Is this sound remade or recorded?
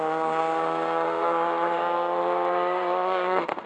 remade